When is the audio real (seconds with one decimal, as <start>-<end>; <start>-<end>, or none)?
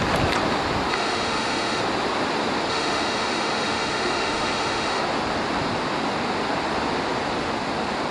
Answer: 0.0-0.9; 1.8-2.7; 5.0-8.1